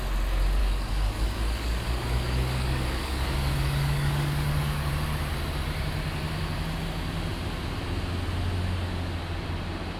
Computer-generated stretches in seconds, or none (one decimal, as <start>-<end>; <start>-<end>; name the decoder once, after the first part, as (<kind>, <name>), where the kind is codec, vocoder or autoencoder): 0.6-4.9 (codec, DAC)